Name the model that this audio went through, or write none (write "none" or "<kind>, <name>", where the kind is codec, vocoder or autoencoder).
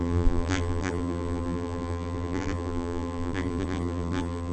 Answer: vocoder, BigVGAN v2